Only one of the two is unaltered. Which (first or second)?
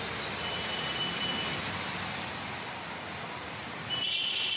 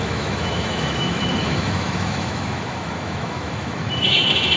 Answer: first